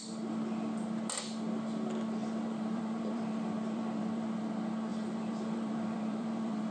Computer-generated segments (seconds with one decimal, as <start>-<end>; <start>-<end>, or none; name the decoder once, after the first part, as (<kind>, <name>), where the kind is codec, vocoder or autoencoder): 2.2-4.5 (vocoder, BigVGAN v2); 4.9-6.7